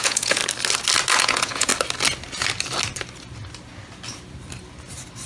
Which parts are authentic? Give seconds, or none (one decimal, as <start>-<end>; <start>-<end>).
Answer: 0.4-1.2; 1.7-5.3